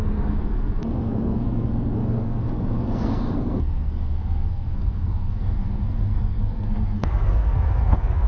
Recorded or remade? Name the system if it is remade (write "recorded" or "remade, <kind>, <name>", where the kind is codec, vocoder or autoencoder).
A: remade, codec, SNAC